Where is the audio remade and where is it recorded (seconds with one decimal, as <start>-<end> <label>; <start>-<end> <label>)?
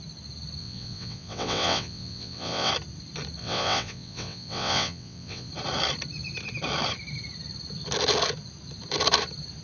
0.0-0.6 recorded; 0.6-2.7 remade; 2.7-3.4 recorded; 3.4-5.5 remade; 5.5-9.6 recorded